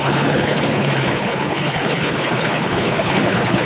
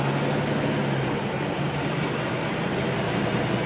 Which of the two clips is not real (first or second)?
first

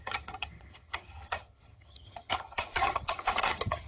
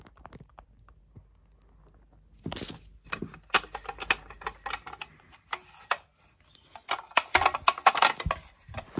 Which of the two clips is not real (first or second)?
first